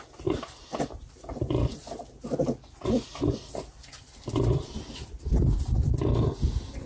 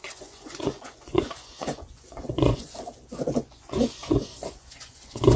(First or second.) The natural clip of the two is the first